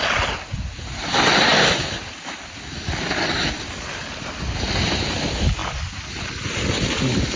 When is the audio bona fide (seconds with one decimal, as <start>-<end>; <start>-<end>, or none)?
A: 0.0-7.4